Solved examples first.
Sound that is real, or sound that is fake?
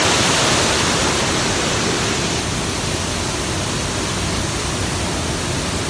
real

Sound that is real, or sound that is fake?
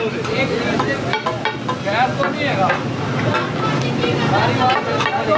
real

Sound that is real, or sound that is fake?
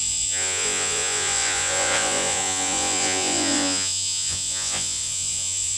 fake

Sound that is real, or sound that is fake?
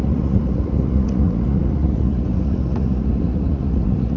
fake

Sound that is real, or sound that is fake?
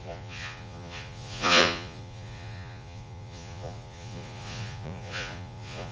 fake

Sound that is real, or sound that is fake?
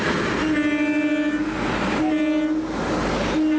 real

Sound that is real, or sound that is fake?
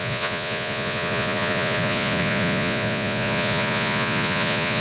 fake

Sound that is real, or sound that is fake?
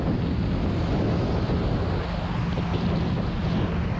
real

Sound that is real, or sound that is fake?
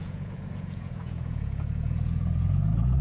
fake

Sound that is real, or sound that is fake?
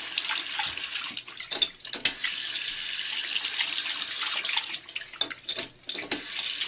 real